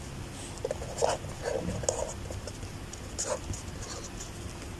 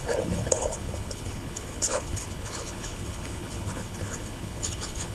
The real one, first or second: first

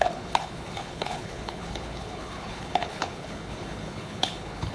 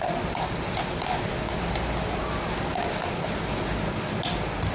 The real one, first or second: second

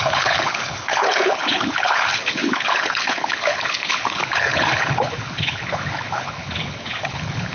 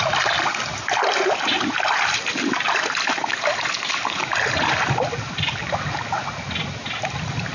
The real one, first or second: second